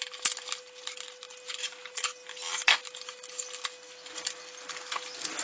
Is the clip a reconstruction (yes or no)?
no